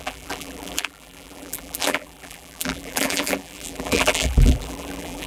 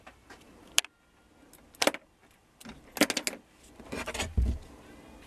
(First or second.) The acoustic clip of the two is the second